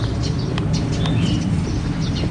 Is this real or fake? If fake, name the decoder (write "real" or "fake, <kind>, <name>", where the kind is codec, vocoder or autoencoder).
real